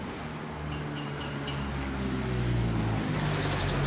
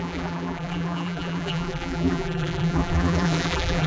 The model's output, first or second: second